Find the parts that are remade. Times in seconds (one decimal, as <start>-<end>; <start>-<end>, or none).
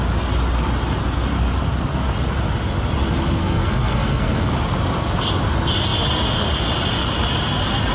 3.4-4.5